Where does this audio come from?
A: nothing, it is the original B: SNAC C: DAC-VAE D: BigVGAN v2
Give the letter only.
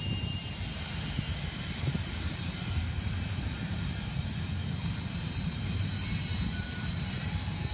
D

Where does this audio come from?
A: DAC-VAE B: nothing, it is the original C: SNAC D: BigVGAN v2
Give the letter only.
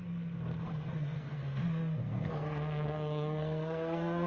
C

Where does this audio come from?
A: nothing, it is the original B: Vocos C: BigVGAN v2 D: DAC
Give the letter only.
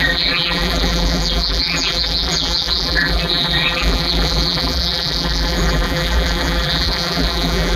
C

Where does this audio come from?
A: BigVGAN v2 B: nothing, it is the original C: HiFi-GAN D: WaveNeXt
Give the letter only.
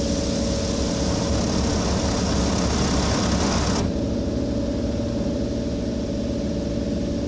B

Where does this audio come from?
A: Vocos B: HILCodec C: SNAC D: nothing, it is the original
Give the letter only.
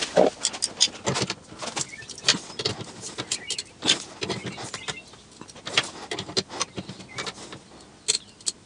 D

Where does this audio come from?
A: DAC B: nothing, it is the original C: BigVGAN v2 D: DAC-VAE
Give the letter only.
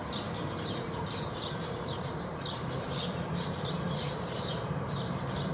C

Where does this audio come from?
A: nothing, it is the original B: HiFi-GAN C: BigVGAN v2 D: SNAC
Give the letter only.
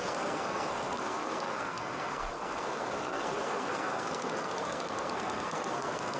D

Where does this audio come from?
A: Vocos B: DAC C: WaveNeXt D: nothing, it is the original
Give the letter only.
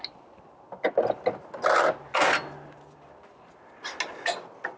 D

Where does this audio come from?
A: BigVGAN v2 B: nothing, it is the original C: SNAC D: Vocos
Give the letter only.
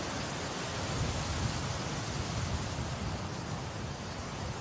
B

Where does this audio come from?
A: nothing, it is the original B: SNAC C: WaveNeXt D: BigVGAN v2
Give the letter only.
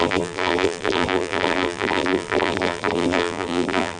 D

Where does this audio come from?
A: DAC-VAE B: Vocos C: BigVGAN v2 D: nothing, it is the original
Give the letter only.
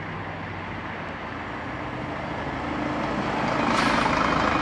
D